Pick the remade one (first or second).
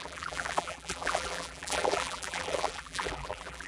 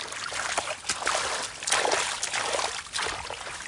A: first